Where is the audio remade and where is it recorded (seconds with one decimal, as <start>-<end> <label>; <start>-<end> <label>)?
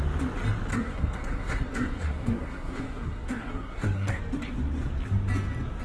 0.0-0.7 recorded; 0.7-4.2 remade; 4.2-5.8 recorded